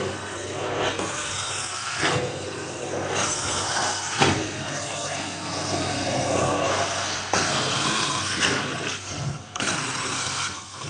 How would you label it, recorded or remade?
remade